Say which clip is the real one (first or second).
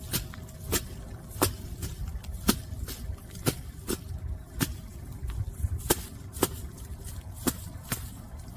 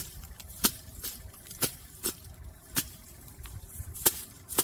first